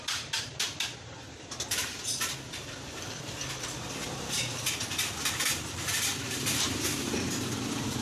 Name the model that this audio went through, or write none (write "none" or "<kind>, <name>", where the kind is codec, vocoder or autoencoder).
vocoder, BigVGAN v2